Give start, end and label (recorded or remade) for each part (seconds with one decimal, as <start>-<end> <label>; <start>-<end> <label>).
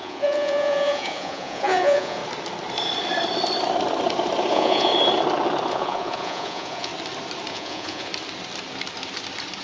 0.0-2.2 remade; 2.2-4.5 recorded; 4.5-4.9 remade; 4.9-5.7 recorded; 5.7-6.9 remade; 6.9-7.5 recorded; 7.5-8.1 remade; 8.1-9.6 recorded